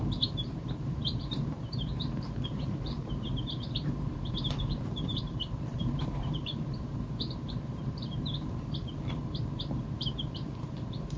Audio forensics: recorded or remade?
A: remade